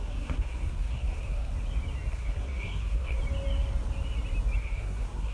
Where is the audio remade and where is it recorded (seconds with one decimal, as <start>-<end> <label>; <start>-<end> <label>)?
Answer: 0.0-1.5 remade; 1.5-2.1 recorded; 2.1-3.2 remade; 3.2-4.6 recorded; 4.6-5.3 remade